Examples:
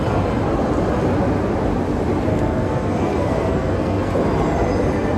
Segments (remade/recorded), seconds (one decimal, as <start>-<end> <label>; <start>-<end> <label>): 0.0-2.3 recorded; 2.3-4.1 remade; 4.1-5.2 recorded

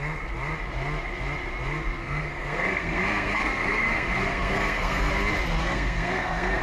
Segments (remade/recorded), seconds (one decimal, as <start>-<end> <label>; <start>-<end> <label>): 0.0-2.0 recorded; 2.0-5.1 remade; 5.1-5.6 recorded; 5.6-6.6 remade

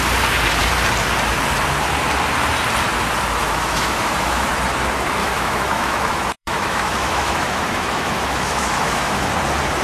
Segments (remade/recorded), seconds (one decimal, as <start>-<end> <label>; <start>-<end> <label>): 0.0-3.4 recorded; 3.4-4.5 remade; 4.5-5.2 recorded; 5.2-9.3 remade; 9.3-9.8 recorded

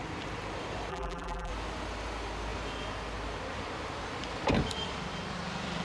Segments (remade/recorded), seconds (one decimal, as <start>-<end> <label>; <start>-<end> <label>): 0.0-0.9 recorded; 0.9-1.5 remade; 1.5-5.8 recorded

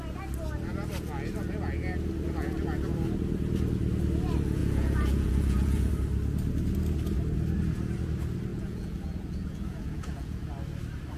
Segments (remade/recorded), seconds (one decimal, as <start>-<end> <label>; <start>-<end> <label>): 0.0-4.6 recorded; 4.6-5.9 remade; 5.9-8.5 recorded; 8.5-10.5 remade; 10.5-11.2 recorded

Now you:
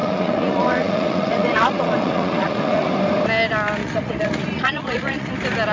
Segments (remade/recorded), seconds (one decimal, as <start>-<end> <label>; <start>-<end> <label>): 0.0-2.9 remade; 2.9-3.8 recorded; 3.8-5.3 remade; 5.3-5.7 recorded

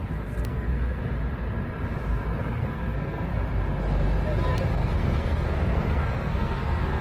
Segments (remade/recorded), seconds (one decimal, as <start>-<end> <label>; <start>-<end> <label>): 0.0-1.0 remade; 1.0-2.4 recorded; 2.4-3.3 remade; 3.3-4.7 recorded; 4.7-7.0 remade